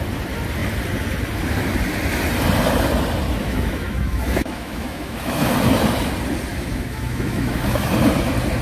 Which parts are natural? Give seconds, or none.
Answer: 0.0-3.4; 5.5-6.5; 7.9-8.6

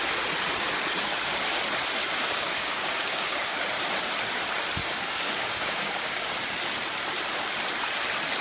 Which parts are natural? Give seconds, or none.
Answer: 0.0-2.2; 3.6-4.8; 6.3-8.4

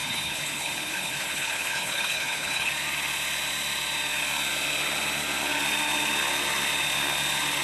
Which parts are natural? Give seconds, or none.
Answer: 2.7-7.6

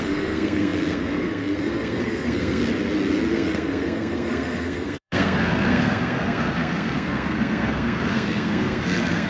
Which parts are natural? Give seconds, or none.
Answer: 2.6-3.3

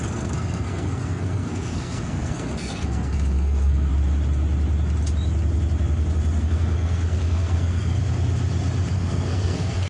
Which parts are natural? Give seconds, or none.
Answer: 3.9-6.4; 8.0-8.9

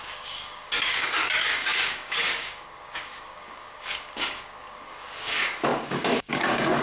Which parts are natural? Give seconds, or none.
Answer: none

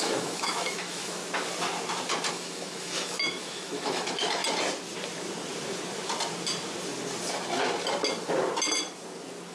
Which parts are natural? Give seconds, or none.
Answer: 1.2-2.3; 4.4-9.5

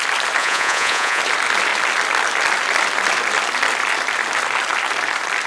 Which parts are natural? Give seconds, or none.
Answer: 0.0-0.4; 1.2-5.5